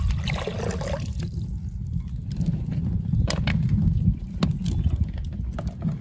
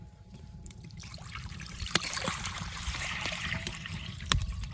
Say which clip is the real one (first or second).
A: first